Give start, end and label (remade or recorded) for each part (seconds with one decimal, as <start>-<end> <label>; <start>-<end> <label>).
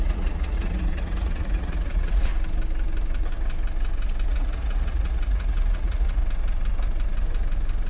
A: 0.0-2.3 remade; 2.3-4.3 recorded; 4.3-6.2 remade; 6.2-7.9 recorded